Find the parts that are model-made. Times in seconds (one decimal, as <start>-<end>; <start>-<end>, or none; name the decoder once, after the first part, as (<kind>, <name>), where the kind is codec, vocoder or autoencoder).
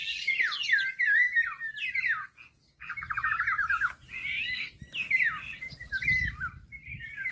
0.0-1.6 (vocoder, BigVGAN v2); 6.0-7.3